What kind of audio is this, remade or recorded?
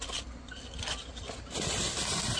recorded